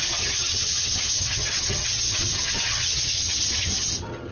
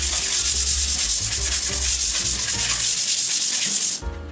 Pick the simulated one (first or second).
first